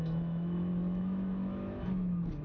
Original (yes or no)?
no